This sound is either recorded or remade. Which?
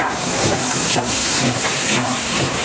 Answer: remade